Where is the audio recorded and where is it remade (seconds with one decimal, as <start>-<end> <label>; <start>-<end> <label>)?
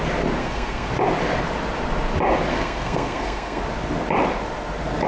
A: 0.0-0.4 recorded; 0.4-0.9 remade; 0.9-2.5 recorded; 2.5-3.6 remade; 3.6-5.1 recorded